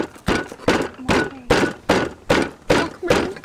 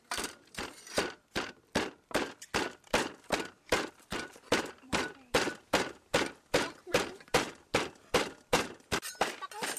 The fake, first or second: second